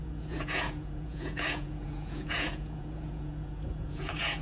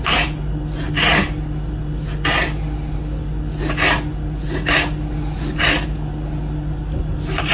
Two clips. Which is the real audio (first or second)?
second